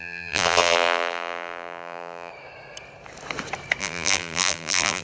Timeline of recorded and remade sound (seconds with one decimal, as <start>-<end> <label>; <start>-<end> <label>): 0.0-2.3 remade; 2.3-3.8 recorded; 3.8-5.0 remade